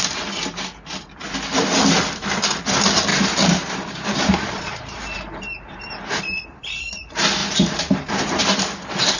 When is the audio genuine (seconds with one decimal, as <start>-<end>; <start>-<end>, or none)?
0.0-3.1; 6.2-7.4; 8.4-9.2